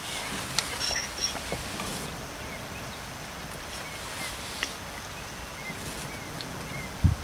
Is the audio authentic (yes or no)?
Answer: yes